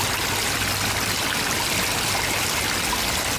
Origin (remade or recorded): recorded